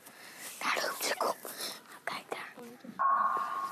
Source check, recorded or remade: remade